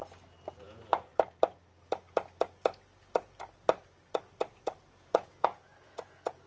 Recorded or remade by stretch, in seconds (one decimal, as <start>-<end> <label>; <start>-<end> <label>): 0.0-0.6 recorded; 0.6-1.1 remade; 1.1-5.0 recorded; 5.0-6.5 remade